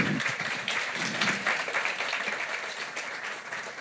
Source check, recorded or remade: remade